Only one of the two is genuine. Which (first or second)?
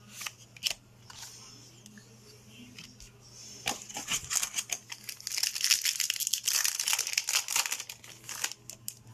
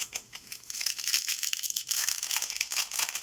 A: first